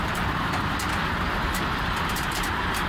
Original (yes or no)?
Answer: no